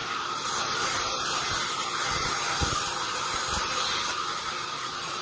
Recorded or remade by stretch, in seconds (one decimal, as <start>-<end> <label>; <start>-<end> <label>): 0.0-5.2 recorded